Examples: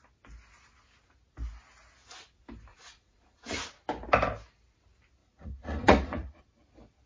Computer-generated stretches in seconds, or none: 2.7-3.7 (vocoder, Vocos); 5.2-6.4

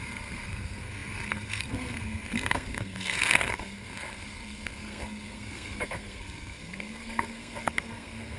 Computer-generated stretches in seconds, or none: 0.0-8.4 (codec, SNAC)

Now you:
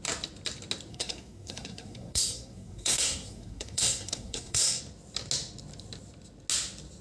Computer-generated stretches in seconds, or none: 0.9-4.8 (codec, SNAC)

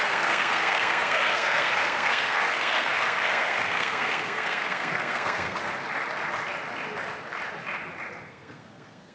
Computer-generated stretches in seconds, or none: 0.0-5.6 (codec, SNAC); 8.2-9.1

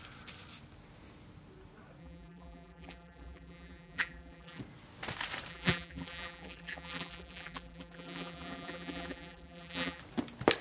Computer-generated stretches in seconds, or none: 2.0-4.6 (vocoder, BigVGAN v2); 5.5-10.0

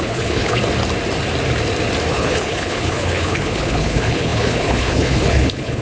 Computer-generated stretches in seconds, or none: 0.0-0.6 (codec, HILCodec); 2.1-5.8